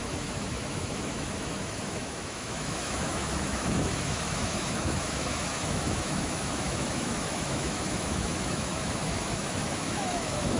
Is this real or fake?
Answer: fake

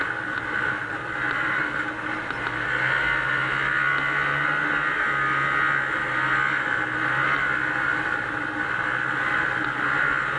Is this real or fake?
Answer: real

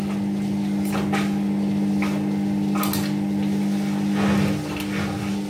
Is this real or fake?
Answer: real